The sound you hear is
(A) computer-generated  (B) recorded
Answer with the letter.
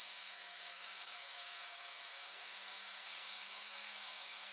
A